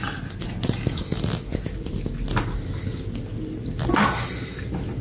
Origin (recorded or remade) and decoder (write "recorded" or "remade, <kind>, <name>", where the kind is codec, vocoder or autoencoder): recorded